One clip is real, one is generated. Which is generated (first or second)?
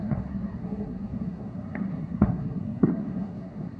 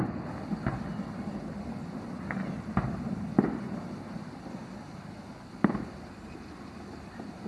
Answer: first